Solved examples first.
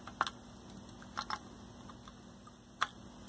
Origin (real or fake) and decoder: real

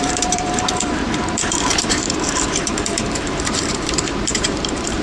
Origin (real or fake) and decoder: fake, vocoder, BigVGAN v2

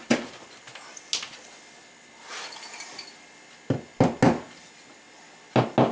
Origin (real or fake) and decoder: real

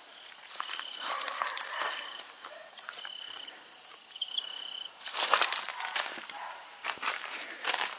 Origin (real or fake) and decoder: fake, vocoder, BigVGAN v2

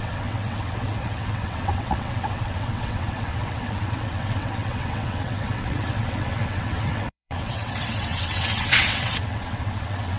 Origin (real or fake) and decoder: fake, vocoder, WaveNeXt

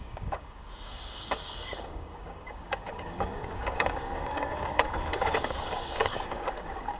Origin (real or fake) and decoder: fake, codec, DAC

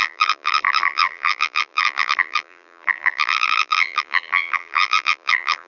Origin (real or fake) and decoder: fake, vocoder, BigVGAN v2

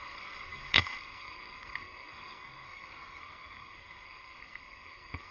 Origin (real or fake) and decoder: fake, codec, SNAC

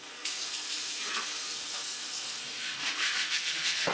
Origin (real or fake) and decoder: fake, codec, SNAC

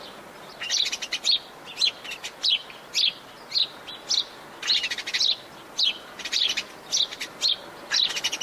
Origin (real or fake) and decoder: real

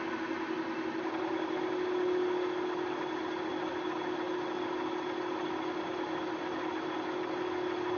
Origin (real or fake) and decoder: real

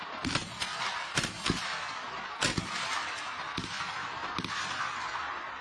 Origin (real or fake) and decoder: real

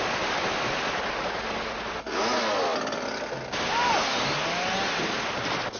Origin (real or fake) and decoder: real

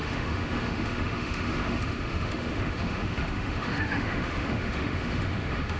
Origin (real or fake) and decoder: fake, autoencoder, DAC-VAE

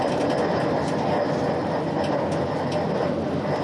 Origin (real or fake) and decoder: real